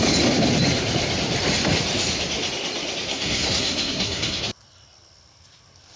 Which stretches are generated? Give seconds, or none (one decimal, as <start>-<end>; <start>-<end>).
3.1-4.4